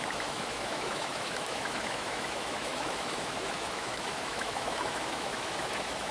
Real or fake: fake